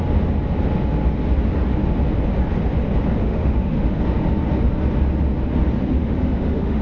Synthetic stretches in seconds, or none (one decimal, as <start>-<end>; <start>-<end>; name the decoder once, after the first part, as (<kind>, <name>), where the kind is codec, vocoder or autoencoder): 3.2-4.0 (autoencoder, DAC-VAE); 6.0-6.8